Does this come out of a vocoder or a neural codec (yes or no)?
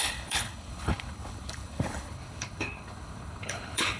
yes